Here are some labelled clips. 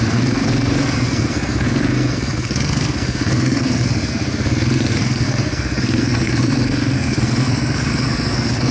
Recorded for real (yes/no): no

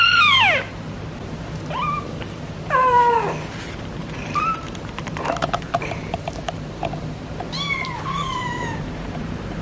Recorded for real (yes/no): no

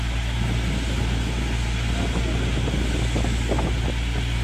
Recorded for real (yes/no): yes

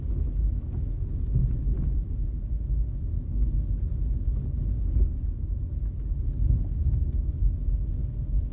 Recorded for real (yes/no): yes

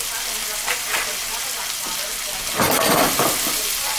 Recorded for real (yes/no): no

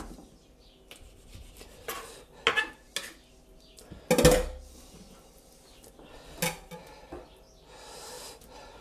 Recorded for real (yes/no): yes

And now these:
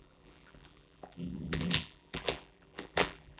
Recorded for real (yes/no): no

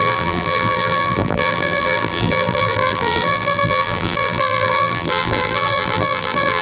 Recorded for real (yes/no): no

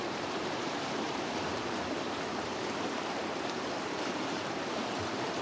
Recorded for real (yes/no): no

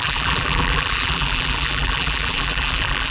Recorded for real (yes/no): no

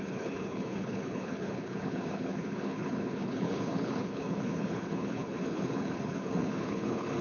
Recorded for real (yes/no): no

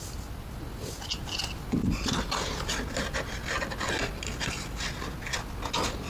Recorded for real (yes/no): yes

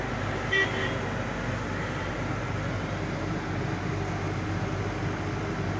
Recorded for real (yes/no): yes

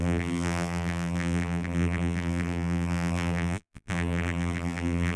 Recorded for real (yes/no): no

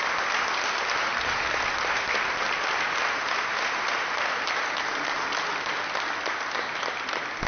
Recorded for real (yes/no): yes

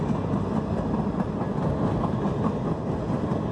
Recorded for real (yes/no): yes